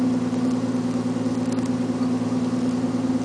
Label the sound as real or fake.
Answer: real